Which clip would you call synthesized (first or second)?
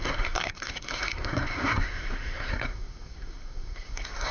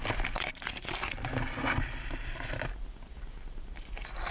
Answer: first